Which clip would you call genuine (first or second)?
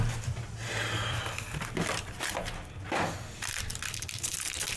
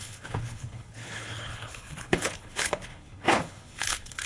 first